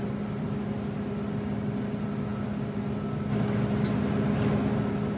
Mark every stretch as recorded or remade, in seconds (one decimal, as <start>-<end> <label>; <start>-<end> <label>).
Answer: 0.0-5.2 recorded